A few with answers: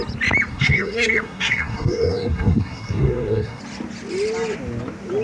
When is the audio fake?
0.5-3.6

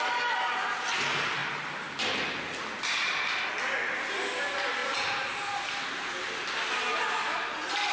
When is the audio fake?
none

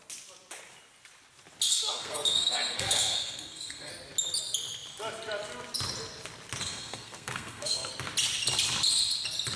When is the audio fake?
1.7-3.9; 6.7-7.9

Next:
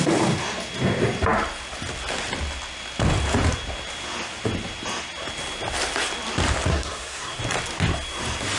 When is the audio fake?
6.7-7.4

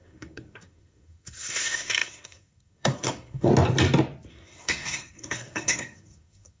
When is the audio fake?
0.0-3.5; 4.3-6.6